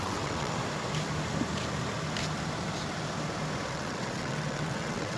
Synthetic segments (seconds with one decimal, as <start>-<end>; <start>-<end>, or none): 0.0-0.6; 3.7-5.2